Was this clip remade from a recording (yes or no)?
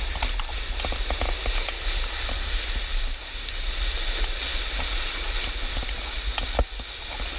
no